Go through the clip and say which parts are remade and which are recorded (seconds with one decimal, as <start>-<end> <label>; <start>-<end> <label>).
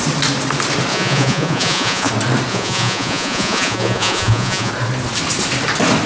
0.0-0.9 recorded; 0.9-2.1 remade; 2.1-2.5 recorded; 2.5-4.7 remade; 4.7-6.1 recorded